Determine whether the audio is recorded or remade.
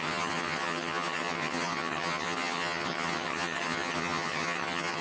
remade